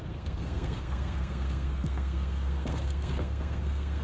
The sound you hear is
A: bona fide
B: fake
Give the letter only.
B